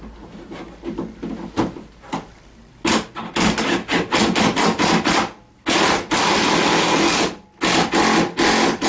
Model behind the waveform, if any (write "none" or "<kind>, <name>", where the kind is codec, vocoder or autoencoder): none